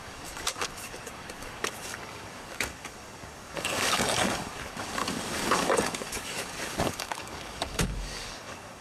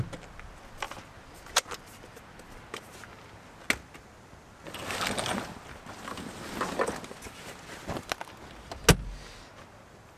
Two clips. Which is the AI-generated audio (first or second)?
first